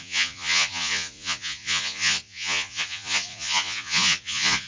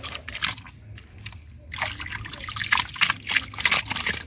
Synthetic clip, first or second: first